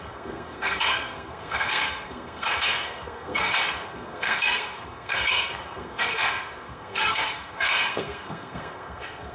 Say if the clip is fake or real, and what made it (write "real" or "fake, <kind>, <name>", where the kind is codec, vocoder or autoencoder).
fake, codec, SNAC